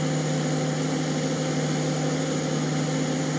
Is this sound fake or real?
real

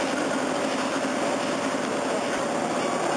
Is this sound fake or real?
real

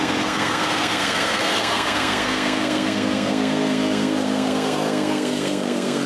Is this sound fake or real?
fake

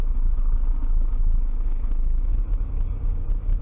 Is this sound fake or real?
real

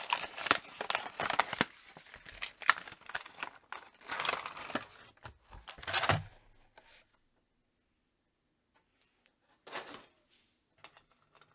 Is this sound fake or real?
real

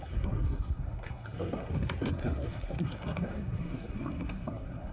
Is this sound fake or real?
fake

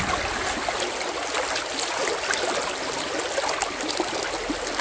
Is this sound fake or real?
real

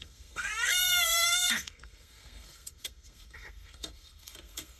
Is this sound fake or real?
fake